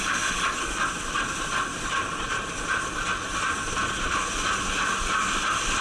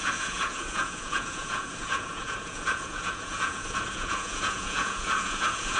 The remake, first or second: second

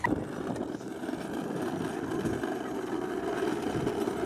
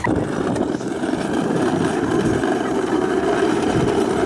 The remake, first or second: second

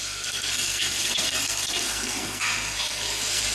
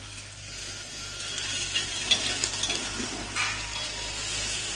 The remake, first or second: first